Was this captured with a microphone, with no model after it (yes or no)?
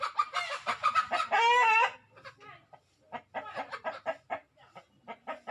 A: yes